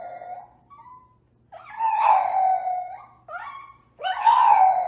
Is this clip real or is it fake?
real